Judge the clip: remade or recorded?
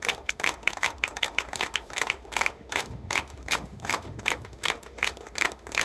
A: remade